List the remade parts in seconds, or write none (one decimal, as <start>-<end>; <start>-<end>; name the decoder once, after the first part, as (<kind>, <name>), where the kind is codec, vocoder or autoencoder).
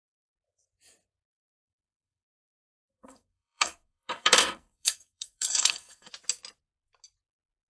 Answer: 1.5-6.1 (codec, SNAC)